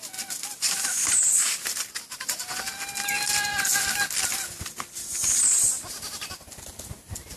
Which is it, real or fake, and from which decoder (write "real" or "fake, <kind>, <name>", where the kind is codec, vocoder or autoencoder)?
real